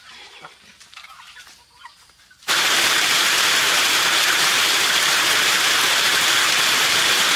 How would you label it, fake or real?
fake